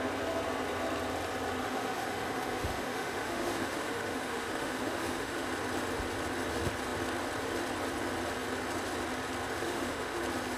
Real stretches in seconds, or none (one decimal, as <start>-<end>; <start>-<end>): 0.0-1.6; 5.5-9.6; 10.2-10.6